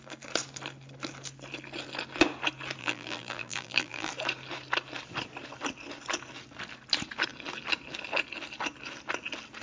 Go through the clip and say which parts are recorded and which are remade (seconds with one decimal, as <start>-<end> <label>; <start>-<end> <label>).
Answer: 0.0-2.8 recorded; 2.8-4.1 remade; 4.1-9.6 recorded